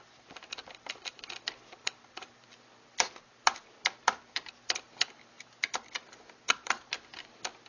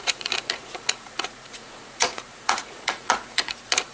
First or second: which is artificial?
second